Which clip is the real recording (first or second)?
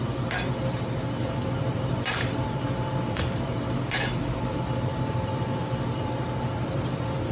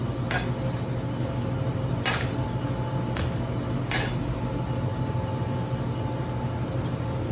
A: second